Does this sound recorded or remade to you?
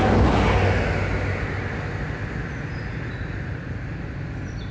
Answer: recorded